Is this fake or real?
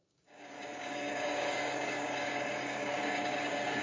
fake